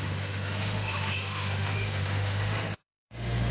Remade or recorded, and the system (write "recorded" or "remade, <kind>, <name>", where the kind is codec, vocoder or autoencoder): remade, autoencoder, DAC-VAE